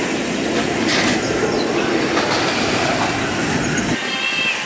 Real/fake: real